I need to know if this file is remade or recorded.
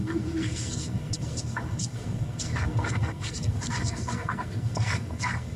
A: remade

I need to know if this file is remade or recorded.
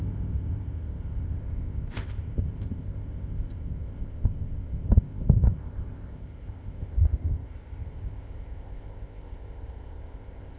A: remade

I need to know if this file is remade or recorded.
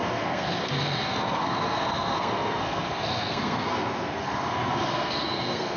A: remade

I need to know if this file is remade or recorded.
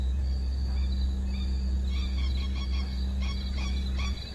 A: recorded